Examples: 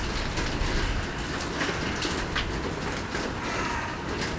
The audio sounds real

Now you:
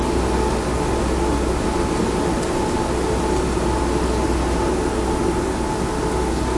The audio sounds real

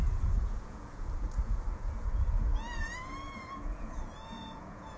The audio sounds fake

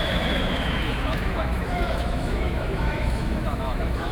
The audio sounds fake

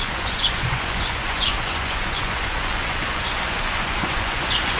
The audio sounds fake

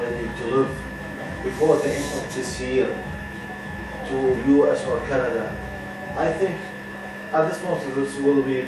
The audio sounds fake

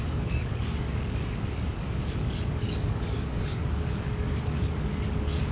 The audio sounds fake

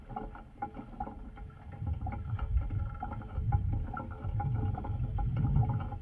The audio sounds real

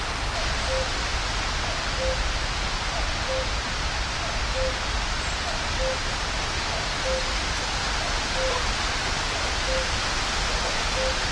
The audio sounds real